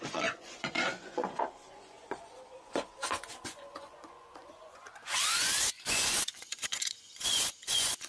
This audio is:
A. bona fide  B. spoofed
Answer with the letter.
B